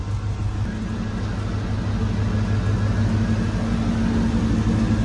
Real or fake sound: real